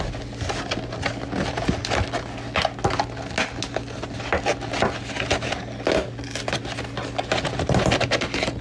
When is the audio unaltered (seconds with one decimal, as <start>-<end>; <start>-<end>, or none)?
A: 0.0-8.6